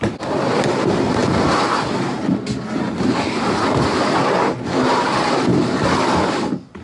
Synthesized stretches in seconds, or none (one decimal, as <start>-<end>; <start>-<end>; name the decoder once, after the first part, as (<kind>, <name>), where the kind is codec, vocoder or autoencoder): none